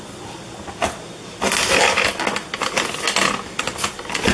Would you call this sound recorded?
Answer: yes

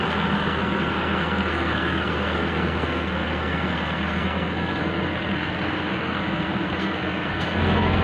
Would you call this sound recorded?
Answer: no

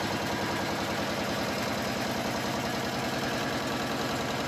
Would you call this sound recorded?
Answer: yes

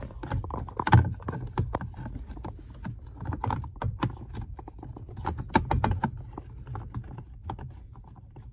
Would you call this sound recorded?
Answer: yes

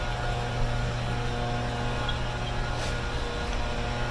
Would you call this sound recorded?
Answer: yes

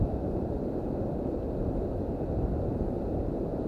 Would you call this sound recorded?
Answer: yes